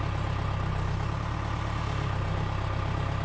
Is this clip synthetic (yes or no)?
no